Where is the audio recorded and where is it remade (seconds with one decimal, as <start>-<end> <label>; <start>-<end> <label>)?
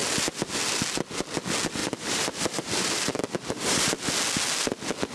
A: 0.0-1.8 recorded; 1.8-3.9 remade; 3.9-5.1 recorded